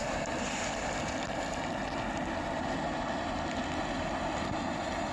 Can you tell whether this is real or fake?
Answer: real